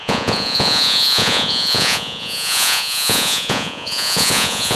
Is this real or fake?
fake